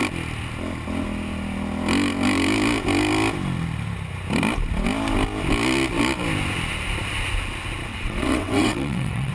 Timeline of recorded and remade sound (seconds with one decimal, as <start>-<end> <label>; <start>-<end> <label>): 0.0-7.9 recorded; 7.9-9.3 remade